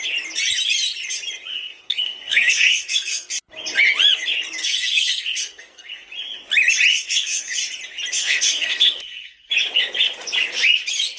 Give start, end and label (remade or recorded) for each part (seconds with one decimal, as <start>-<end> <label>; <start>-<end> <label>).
0.0-1.5 recorded; 1.5-3.3 remade; 3.3-4.6 recorded; 4.6-6.1 remade; 6.1-6.9 recorded; 6.9-7.5 remade; 7.5-8.2 recorded; 8.2-9.5 remade; 9.5-11.2 recorded